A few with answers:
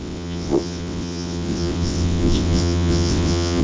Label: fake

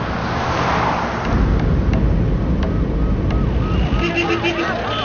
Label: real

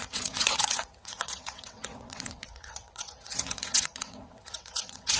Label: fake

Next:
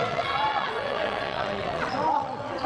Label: fake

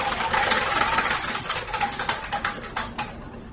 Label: real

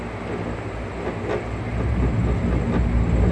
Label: real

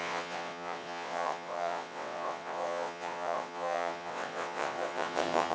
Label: fake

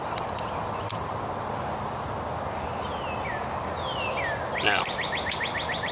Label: real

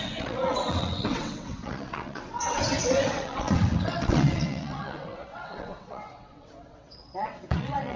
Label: fake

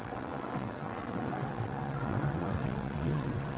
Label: fake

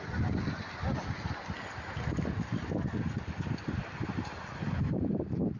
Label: real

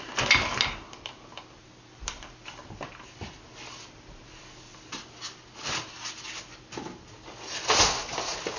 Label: real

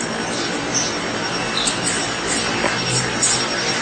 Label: real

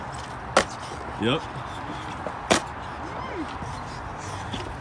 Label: real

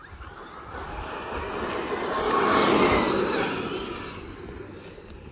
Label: real